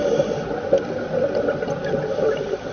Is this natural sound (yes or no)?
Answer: yes